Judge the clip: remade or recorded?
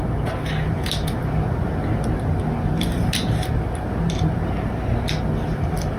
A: recorded